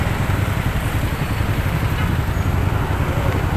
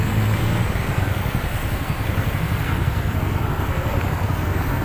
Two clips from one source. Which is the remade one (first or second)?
second